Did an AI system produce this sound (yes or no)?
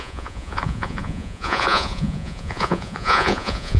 yes